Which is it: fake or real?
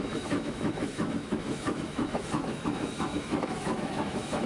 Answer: fake